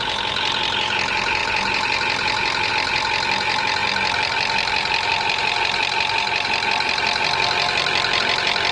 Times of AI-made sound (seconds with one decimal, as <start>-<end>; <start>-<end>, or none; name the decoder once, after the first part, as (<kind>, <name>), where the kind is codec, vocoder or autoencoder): none